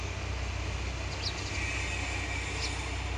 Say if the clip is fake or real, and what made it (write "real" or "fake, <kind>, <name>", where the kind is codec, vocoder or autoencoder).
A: real